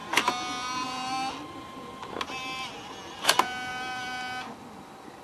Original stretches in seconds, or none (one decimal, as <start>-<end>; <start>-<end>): 0.0-5.2